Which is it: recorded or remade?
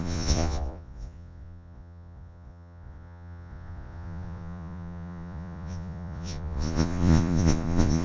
remade